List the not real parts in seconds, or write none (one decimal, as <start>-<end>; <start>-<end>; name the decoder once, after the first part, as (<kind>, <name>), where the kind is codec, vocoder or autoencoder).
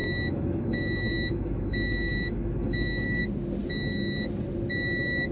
0.0-3.2 (autoencoder, DAC-VAE)